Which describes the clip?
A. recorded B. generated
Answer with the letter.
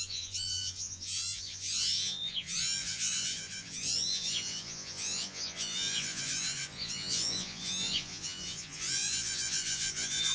B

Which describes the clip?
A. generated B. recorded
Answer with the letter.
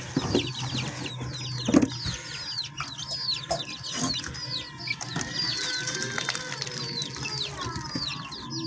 B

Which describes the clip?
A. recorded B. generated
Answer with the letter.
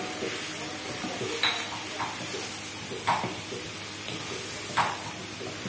A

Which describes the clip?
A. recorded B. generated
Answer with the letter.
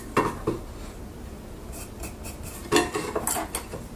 A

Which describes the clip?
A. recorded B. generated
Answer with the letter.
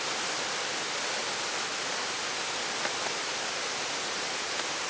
A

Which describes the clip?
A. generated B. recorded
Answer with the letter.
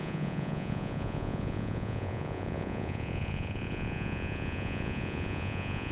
A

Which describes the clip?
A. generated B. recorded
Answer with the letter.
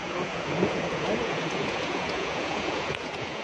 A